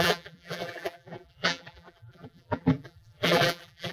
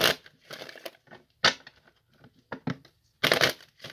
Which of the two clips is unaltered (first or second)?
second